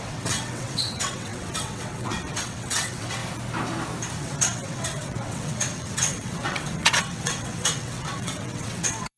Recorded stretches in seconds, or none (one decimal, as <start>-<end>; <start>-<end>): 3.2-4.2